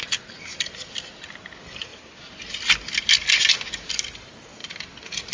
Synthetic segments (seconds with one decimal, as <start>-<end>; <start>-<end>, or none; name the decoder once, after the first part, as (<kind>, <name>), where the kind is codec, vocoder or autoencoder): none